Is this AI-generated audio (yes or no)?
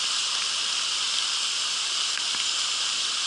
yes